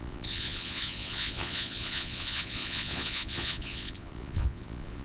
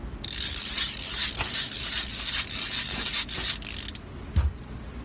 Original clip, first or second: second